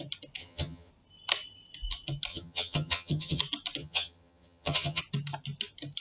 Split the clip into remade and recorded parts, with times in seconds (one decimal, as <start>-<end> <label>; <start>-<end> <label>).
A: 0.0-0.4 recorded; 0.4-0.9 remade; 0.9-2.3 recorded; 2.3-3.4 remade; 3.4-3.8 recorded; 3.8-5.0 remade; 5.0-6.0 recorded